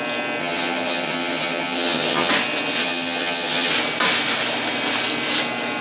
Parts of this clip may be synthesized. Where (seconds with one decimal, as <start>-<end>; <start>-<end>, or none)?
0.4-2.3; 2.8-3.7